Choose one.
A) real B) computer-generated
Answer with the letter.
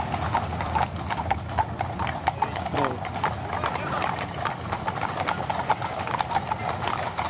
A